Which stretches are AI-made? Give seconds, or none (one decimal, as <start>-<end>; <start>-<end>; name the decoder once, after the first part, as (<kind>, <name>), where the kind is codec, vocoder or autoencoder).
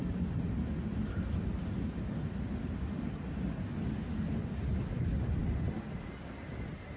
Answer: none